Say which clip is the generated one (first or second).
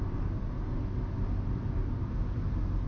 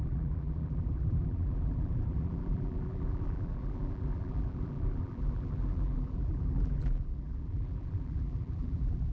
second